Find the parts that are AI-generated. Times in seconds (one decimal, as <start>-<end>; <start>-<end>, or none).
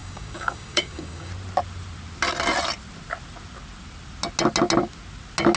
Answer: 0.0-1.3